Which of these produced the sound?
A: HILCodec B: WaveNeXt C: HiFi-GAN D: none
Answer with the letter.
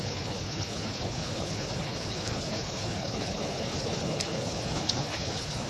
A